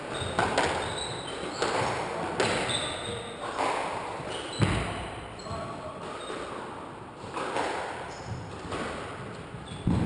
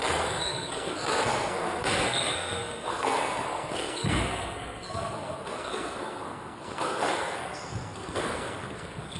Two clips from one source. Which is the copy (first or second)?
second